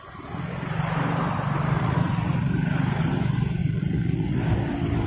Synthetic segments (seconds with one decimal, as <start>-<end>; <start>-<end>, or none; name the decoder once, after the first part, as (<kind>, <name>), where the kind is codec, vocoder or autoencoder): 1.6-2.4 (vocoder, Vocos); 3.6-4.4